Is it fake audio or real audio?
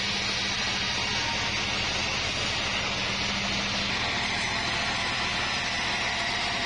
real